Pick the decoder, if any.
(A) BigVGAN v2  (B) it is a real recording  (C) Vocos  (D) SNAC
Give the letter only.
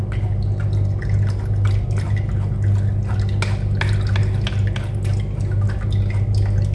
B